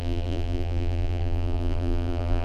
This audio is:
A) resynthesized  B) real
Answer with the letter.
A